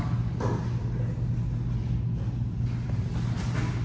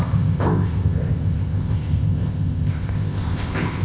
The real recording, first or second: first